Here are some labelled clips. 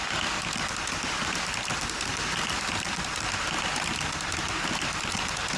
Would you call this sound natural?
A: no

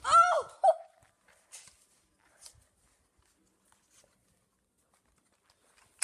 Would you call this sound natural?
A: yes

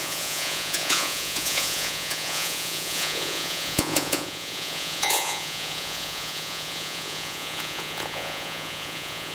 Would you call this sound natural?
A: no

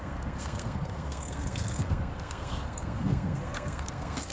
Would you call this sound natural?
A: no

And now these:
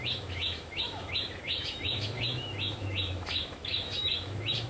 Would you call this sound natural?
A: no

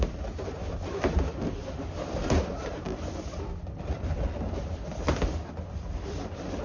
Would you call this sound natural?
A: yes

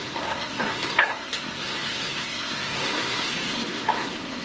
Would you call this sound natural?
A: no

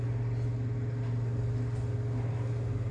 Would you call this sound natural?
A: yes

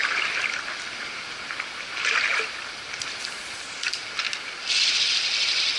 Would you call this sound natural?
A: yes